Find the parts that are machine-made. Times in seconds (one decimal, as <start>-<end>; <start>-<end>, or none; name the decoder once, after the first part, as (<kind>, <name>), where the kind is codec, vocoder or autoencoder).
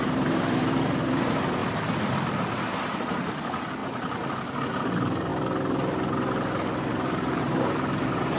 0.0-1.6 (vocoder, BigVGAN v2); 3.0-3.8; 4.7-5.3; 6.9-8.4